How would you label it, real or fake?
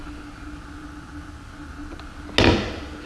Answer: real